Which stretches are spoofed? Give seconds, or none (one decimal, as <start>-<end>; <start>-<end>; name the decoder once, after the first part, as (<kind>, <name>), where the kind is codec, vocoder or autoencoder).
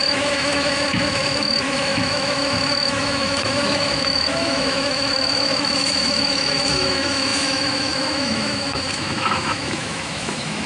0.0-10.7 (autoencoder, DAC-VAE)